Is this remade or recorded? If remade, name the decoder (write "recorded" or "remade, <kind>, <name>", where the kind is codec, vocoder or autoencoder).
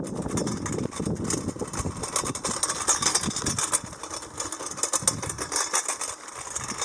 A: recorded